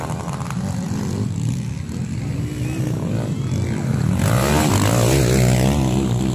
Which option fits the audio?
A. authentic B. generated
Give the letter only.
A